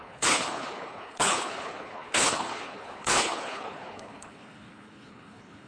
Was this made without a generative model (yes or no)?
no